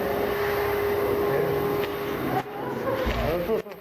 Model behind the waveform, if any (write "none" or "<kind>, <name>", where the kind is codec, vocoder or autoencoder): none